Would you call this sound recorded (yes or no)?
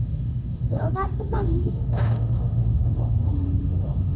no